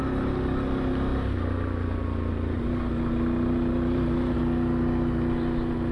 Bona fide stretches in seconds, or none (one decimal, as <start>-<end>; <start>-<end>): 0.0-5.9